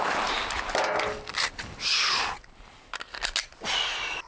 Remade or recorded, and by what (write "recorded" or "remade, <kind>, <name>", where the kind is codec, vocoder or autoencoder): recorded